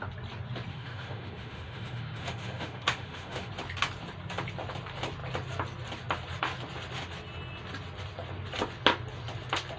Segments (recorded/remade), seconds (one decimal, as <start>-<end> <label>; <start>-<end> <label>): 0.0-0.7 recorded; 0.7-3.5 remade; 3.5-9.8 recorded